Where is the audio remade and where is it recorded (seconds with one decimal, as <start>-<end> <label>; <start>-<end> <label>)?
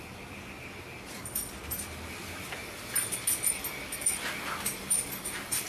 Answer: 0.0-2.6 remade; 2.6-4.1 recorded; 4.1-5.7 remade